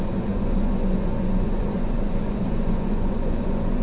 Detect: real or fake fake